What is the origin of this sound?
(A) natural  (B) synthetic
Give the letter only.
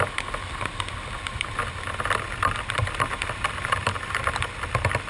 A